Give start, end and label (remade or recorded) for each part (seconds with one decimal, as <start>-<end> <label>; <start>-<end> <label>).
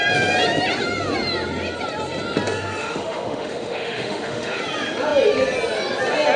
0.0-2.8 recorded; 2.8-4.6 remade; 4.6-6.4 recorded